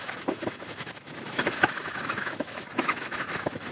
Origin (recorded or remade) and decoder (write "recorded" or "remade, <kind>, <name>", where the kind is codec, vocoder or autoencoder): remade, autoencoder, DAC-VAE